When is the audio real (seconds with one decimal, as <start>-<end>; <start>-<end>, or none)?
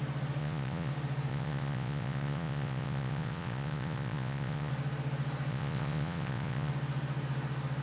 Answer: 0.0-0.4; 0.9-1.3; 4.7-5.5; 6.7-7.8